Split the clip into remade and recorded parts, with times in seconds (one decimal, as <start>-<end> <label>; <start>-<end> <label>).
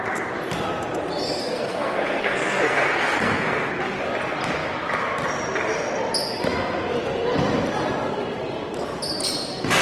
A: 0.0-1.4 recorded; 1.4-3.7 remade; 3.7-9.8 recorded